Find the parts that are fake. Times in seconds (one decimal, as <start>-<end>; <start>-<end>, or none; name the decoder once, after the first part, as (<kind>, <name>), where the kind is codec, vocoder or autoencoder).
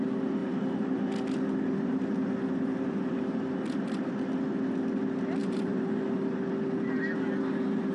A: 0.4-1.0 (vocoder, BigVGAN v2); 5.4-6.0